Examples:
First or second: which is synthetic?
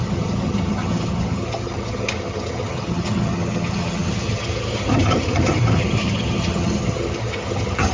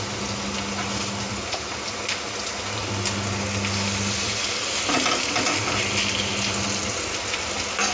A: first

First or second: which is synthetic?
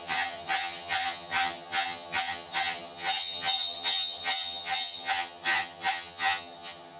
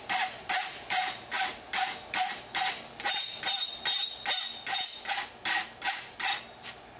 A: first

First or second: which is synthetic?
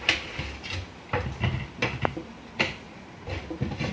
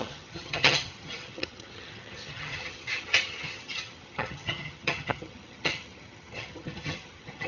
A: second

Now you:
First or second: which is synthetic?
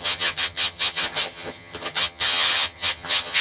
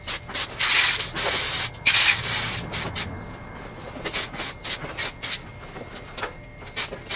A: first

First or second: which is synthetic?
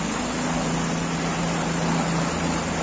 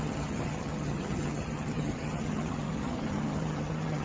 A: second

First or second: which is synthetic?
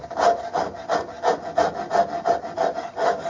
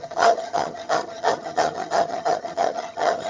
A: second